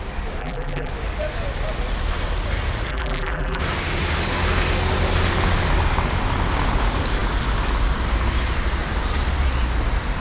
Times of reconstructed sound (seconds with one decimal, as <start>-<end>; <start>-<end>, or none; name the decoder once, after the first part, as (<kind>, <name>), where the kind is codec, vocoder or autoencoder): 0.4-0.9 (vocoder, BigVGAN v2); 2.9-3.6